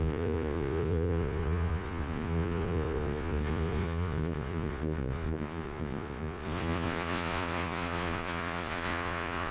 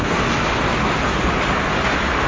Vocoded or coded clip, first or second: first